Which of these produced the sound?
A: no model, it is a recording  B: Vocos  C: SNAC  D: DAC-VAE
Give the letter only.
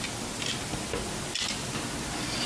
A